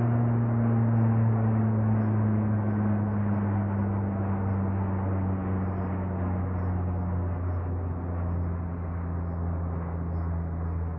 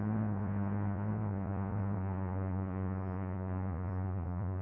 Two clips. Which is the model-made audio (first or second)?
second